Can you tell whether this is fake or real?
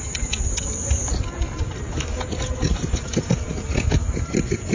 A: real